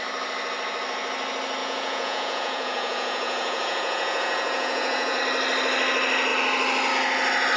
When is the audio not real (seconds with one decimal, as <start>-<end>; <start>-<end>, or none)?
1.6-5.2